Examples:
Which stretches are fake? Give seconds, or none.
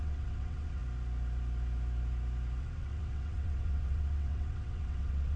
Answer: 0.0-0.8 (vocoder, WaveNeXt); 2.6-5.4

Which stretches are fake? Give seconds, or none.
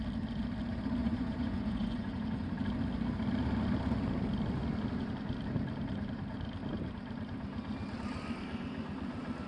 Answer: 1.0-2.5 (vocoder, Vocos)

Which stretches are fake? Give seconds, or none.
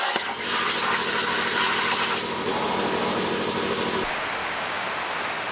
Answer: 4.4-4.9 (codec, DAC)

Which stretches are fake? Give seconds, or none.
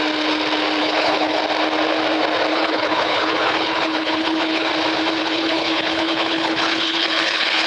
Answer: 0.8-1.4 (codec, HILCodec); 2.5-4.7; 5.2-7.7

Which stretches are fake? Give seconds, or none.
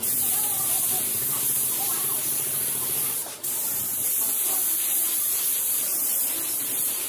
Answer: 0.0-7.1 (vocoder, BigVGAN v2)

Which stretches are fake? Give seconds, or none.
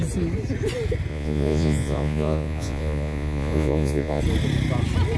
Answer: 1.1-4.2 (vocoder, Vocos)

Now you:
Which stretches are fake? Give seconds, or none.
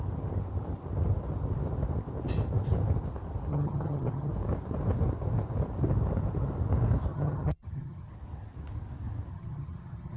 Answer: 3.5-4.3 (vocoder, HiFi-GAN); 7.1-8.1; 9.3-10.2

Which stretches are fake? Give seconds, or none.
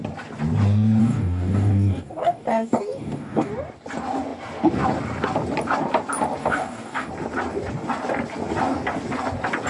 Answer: 1.0-3.5 (codec, DAC); 6.4-7.1